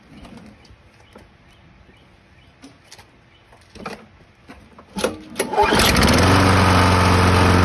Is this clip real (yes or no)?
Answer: yes